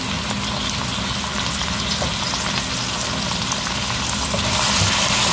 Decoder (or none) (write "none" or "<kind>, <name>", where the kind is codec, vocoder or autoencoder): none